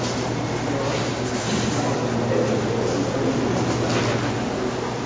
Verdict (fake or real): real